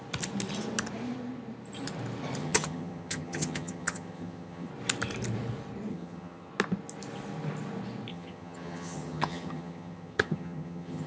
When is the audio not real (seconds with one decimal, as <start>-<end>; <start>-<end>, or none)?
2.4-4.7; 5.9-6.5; 8.1-11.1